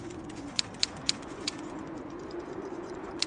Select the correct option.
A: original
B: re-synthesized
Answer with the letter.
B